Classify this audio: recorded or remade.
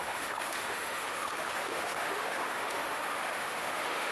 remade